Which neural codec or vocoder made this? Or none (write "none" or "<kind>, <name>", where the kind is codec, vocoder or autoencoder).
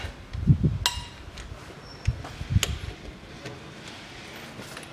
none